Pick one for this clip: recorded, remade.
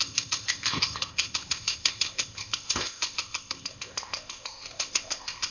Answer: remade